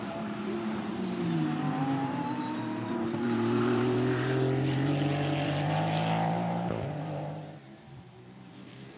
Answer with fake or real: fake